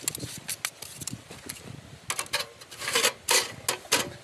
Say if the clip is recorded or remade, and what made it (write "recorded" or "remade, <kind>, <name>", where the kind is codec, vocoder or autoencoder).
recorded